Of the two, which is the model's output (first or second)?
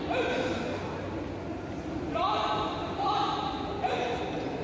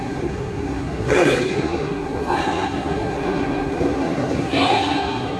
second